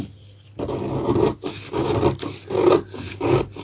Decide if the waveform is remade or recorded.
recorded